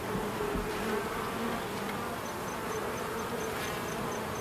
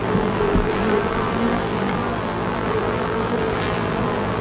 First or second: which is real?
first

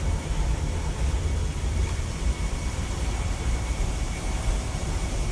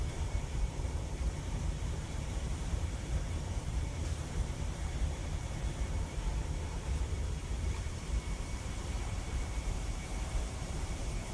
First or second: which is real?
first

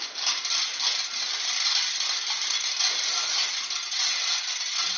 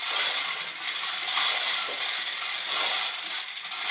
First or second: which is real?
first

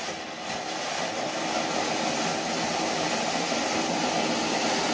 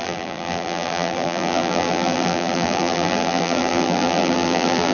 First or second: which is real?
first